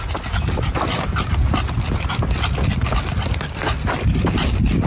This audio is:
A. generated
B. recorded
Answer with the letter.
B